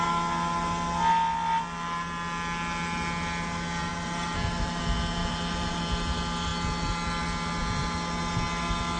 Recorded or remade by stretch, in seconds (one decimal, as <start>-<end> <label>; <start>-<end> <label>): 0.0-3.9 recorded; 3.9-4.8 remade; 4.8-5.2 recorded; 5.2-5.8 remade; 5.8-9.0 recorded